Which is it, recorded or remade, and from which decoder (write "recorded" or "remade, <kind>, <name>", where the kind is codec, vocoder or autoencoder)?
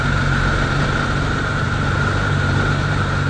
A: remade, vocoder, BigVGAN v2